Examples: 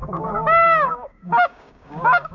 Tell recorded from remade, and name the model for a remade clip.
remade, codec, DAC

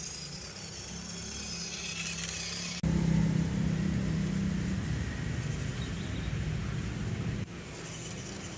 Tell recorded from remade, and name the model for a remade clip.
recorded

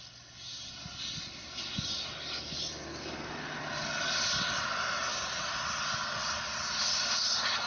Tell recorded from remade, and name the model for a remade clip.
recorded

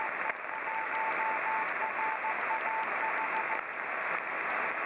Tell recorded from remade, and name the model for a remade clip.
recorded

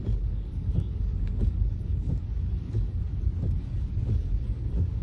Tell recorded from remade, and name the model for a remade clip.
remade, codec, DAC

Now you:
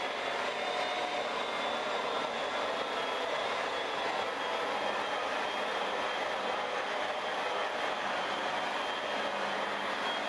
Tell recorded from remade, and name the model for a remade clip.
recorded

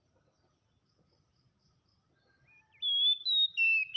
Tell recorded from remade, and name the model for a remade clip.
recorded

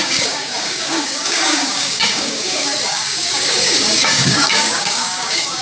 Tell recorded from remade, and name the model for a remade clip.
remade, codec, DAC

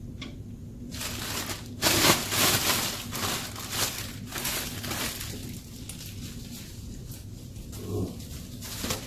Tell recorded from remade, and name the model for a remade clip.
recorded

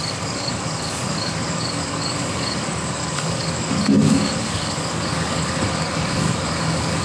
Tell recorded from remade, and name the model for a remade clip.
remade, codec, DAC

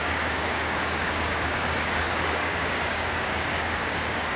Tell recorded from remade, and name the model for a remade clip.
remade, codec, DAC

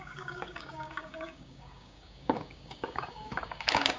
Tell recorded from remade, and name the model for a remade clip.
remade, codec, DAC